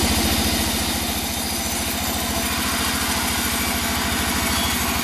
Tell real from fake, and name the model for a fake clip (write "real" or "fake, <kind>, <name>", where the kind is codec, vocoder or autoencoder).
real